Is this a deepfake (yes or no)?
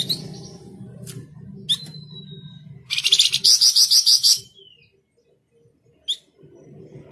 no